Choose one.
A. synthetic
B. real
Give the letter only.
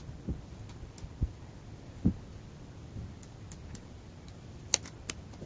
B